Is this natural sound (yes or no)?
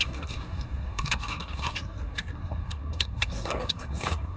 no